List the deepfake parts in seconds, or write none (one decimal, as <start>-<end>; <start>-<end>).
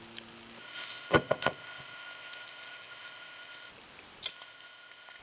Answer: 0.6-3.7; 4.3-5.2